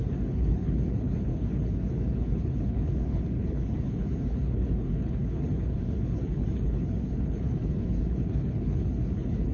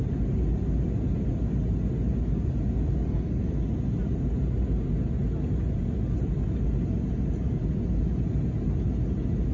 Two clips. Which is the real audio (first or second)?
second